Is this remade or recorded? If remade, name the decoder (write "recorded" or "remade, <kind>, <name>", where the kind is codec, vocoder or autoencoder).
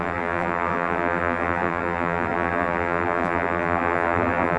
remade, vocoder, BigVGAN v2